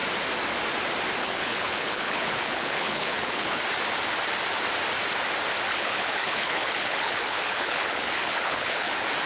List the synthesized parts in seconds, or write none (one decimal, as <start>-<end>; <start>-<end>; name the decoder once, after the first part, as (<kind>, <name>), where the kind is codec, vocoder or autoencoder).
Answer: 1.2-3.6 (codec, HILCodec); 5.7-8.9